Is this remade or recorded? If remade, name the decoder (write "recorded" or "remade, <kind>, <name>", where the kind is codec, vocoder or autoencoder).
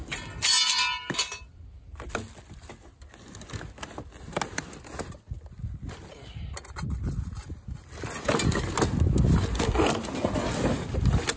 recorded